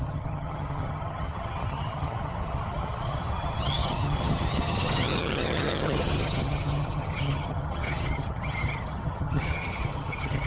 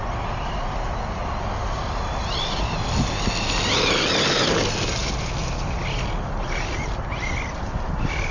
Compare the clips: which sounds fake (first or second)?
first